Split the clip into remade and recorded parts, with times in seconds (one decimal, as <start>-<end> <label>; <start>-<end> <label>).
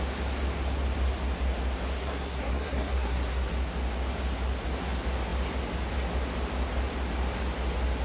0.0-2.0 recorded; 2.0-3.5 remade; 3.5-8.0 recorded